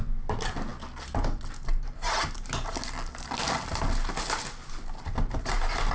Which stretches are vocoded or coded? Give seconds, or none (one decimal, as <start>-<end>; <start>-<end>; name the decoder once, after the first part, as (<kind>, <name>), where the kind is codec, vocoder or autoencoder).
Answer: none